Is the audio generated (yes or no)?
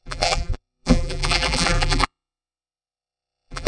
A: yes